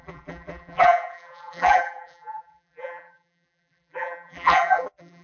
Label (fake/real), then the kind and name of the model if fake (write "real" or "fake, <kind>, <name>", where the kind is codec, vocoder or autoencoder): fake, vocoder, BigVGAN v2